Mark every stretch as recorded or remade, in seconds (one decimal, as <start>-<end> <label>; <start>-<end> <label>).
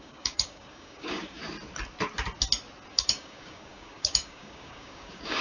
0.0-1.4 remade; 1.4-2.9 recorded; 2.9-5.4 remade